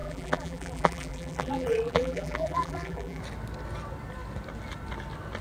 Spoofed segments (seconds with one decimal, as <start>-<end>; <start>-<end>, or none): 0.0-3.2

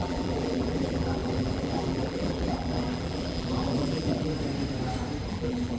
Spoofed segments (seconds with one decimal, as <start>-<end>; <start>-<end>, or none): 0.0-4.3; 5.3-5.8

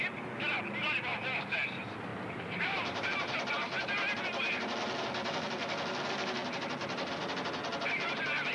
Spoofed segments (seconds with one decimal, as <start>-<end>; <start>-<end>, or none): 2.1-3.5

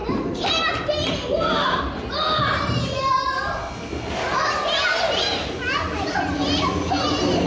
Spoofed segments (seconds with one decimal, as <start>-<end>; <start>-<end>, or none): none